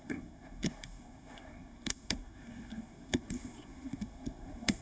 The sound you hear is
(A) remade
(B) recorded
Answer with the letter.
A